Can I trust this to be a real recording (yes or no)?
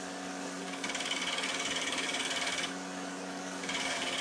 no